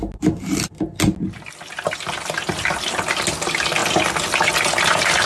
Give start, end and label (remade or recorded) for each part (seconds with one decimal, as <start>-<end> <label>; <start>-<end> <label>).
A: 0.0-5.3 recorded